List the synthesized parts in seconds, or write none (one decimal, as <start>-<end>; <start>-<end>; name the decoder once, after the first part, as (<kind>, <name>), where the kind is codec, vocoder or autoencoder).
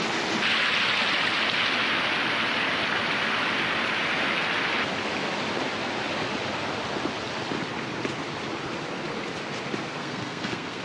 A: 10.0-10.8 (codec, SNAC)